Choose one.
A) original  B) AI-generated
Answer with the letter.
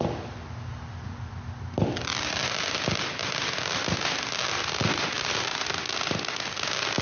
A